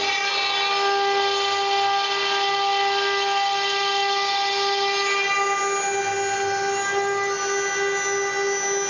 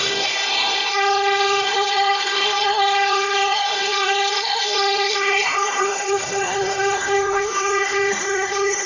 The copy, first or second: second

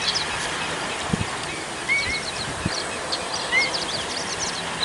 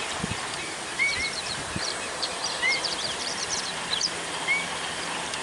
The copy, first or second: second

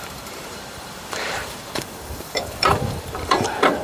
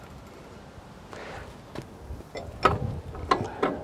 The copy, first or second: first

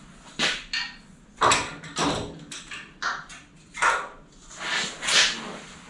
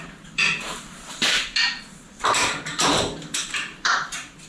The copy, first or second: second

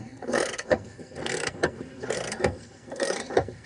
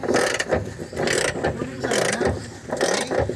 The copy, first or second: first